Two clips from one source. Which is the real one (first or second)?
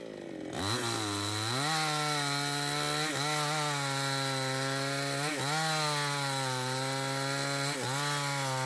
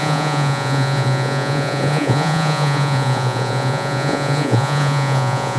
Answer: first